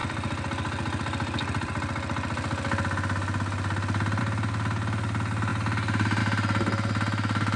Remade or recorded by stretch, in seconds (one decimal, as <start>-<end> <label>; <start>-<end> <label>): 0.0-7.6 recorded